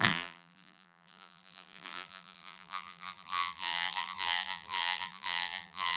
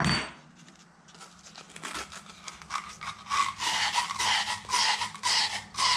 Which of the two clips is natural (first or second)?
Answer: second